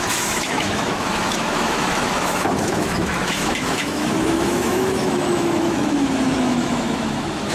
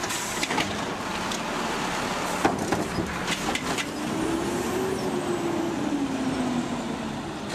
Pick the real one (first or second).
second